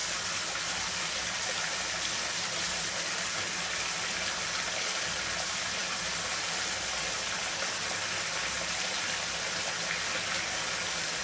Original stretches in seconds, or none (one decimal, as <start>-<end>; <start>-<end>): 0.0-11.2